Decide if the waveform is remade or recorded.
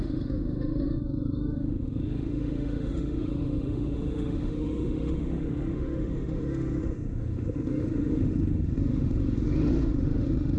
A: remade